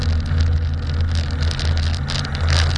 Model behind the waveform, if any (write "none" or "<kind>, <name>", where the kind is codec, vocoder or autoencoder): none